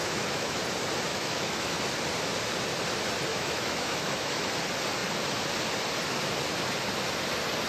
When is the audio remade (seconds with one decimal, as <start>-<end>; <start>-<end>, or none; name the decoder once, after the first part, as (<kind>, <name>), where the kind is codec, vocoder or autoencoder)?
0.0-0.6 (autoencoder, DAC-VAE); 1.1-1.8; 3.3-4.5